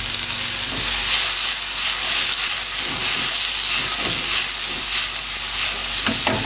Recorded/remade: recorded